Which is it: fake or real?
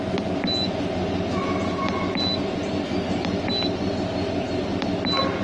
real